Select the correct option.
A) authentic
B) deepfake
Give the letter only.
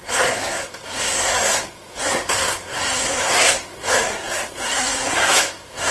B